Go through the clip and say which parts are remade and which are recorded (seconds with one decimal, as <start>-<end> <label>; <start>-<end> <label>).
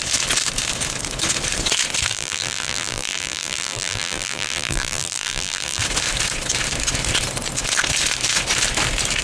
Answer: 0.0-2.1 recorded; 2.1-5.8 remade; 5.8-9.2 recorded